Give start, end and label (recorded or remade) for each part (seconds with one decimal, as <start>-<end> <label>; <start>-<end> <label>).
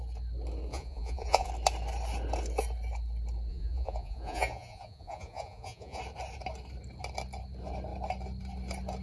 0.0-0.7 recorded; 0.7-1.5 remade; 1.5-3.5 recorded; 3.5-6.0 remade; 6.0-9.0 recorded